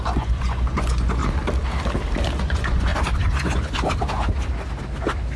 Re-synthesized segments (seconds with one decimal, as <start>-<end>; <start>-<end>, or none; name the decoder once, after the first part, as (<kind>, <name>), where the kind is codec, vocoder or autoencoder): 0.0-1.2 (vocoder, Vocos); 2.4-2.9